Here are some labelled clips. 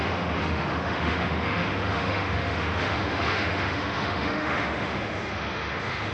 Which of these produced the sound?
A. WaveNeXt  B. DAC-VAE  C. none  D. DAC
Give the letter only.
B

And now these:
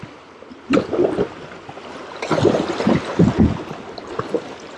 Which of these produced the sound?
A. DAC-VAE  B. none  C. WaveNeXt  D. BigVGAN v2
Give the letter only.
B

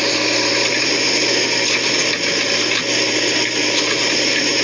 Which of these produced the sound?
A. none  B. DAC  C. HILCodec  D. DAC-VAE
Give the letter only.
A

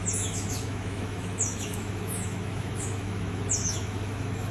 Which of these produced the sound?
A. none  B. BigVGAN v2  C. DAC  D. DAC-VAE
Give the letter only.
D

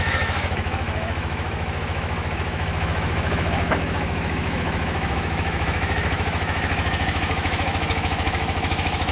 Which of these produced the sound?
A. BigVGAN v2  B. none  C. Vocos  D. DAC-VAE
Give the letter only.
D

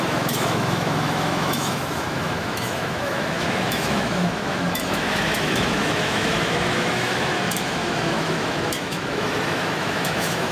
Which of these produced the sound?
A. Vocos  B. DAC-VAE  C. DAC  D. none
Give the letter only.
B